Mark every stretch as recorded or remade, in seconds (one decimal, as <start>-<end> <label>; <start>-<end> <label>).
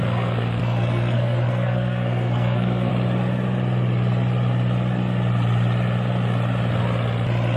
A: 0.0-2.9 remade; 2.9-7.6 recorded